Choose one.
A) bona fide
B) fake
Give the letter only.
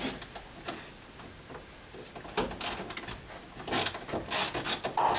A